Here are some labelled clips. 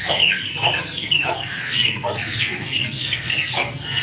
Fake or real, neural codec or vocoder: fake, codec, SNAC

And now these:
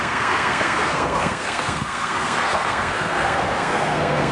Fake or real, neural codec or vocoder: fake, codec, SNAC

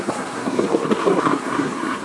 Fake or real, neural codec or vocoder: fake, codec, SNAC